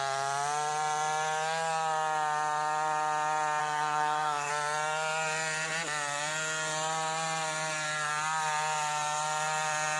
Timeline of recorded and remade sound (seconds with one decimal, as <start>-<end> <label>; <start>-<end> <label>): 0.0-3.6 recorded; 3.6-4.5 remade; 4.5-10.0 recorded